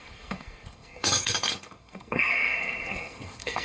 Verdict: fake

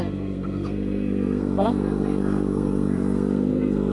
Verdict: fake